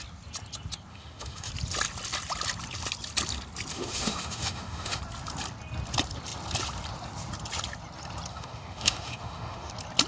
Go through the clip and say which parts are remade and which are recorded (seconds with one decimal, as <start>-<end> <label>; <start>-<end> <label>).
0.0-0.9 recorded; 0.9-1.5 remade; 1.5-3.7 recorded; 3.7-5.0 remade; 5.0-8.3 recorded; 8.3-9.7 remade; 9.7-10.1 recorded